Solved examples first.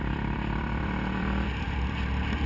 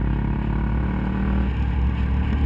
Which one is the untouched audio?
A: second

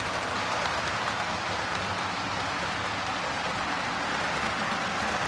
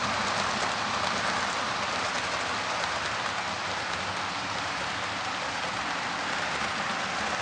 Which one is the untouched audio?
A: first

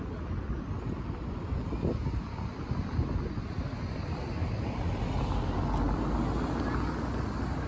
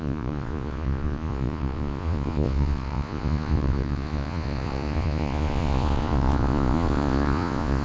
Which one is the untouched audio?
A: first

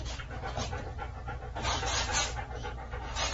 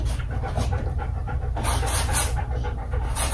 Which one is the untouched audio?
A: first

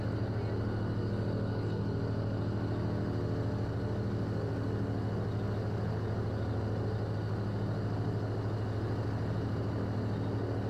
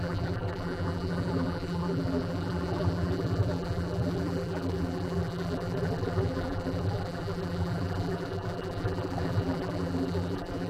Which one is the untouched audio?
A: first